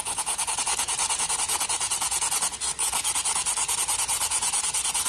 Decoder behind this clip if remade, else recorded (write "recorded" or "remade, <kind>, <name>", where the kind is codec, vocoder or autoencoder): remade, vocoder, Vocos